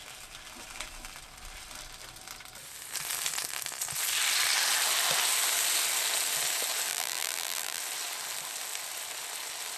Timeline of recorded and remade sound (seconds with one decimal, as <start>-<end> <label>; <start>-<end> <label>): 0.0-6.9 recorded; 6.9-7.8 remade; 7.8-9.8 recorded